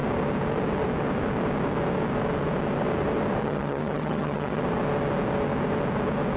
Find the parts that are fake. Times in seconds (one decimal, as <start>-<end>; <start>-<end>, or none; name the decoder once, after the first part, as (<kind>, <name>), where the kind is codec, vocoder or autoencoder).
3.4-4.6 (vocoder, HiFi-GAN)